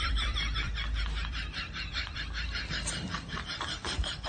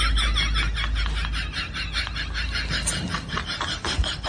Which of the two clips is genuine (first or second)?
second